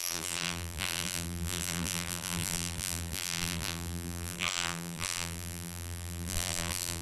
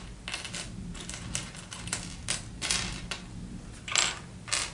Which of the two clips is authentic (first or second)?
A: second